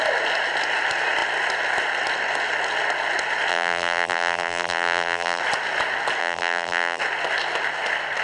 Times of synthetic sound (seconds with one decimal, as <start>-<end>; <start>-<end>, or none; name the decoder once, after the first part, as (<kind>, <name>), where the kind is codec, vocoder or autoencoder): 3.5-5.4 (vocoder, BigVGAN v2); 6.2-7.0